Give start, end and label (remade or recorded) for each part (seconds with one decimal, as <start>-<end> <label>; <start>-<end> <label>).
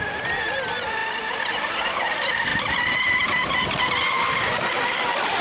0.0-5.4 recorded